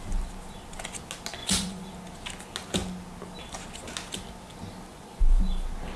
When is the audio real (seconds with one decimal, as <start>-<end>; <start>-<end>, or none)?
0.0-1.4; 1.9-4.9; 5.4-6.0

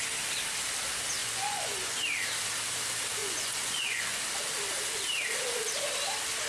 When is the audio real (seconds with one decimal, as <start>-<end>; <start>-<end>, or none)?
0.0-1.2; 2.0-3.2; 4.2-6.5

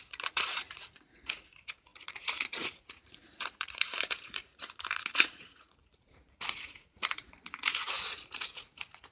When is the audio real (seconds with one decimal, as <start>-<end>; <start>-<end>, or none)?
none

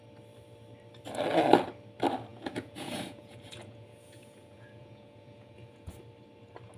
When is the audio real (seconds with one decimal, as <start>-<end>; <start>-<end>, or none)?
0.0-2.3; 5.9-6.8